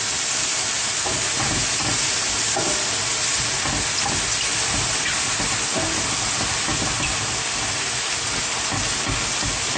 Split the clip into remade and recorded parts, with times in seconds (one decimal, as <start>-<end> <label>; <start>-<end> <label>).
0.0-6.7 recorded; 6.7-8.9 remade; 8.9-9.8 recorded